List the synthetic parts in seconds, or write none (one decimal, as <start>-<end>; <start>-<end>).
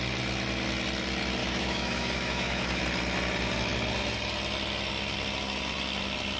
1.4-2.8